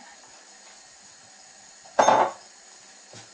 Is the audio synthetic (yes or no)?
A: no